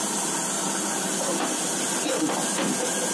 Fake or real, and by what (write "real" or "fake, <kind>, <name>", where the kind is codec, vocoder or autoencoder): real